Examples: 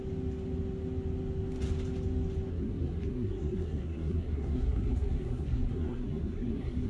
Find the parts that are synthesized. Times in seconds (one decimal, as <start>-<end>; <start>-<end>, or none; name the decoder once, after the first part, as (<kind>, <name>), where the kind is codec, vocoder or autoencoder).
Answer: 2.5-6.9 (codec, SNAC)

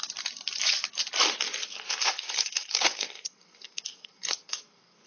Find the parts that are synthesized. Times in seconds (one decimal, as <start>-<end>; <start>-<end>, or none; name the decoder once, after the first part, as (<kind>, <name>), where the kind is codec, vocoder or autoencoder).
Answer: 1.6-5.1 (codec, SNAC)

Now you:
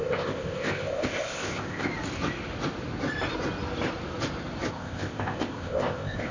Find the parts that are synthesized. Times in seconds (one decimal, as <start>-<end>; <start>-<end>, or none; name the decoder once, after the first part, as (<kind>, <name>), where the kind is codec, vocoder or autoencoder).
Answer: 0.0-1.9 (codec, ZipCodec); 4.7-6.3